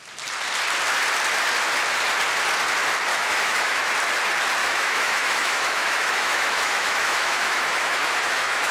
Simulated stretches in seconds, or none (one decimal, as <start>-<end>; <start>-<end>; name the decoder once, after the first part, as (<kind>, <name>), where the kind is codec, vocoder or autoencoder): 3.1-3.9 (autoencoder, DAC-VAE); 4.6-8.7